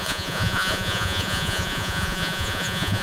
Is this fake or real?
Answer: fake